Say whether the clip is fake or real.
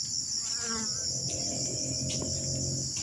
real